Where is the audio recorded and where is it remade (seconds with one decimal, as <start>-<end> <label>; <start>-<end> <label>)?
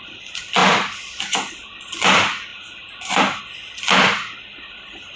0.0-2.5 recorded; 2.5-3.4 remade; 3.4-5.2 recorded